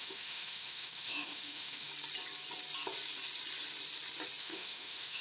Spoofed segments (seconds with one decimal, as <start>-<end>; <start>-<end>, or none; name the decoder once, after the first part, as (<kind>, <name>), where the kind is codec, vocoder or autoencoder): 0.0-1.9 (autoencoder, DAC-VAE); 4.4-5.2